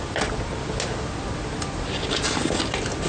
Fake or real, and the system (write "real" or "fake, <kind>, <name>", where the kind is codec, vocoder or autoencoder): real